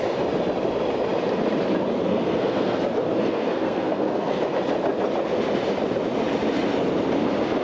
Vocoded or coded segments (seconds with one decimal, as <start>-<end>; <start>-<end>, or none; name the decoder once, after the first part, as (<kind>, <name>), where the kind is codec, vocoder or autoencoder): 2.1-2.8 (codec, SNAC); 3.2-4.4